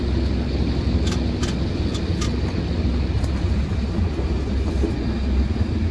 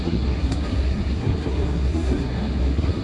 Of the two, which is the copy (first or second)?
second